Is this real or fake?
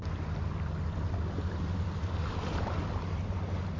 real